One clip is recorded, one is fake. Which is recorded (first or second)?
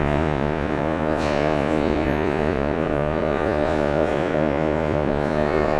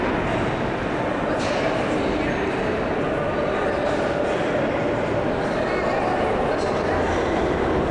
second